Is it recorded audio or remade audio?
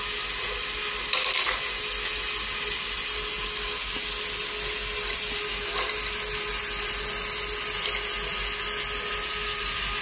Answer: recorded